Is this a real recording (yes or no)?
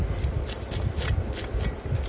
yes